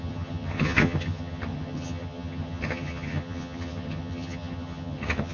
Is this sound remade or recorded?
remade